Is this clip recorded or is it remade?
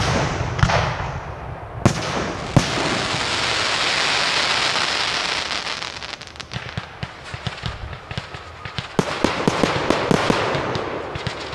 recorded